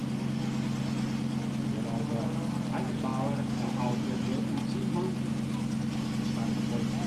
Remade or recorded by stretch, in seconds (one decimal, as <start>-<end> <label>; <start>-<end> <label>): 0.0-7.1 recorded